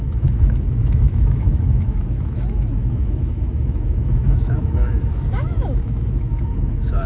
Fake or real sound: fake